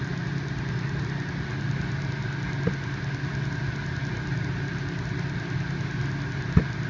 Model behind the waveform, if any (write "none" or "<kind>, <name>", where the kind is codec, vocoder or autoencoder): none